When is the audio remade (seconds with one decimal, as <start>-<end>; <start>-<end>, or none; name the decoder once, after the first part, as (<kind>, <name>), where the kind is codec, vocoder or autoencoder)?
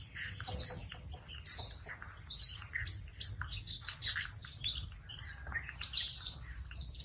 none